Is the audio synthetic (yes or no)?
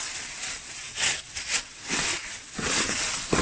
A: yes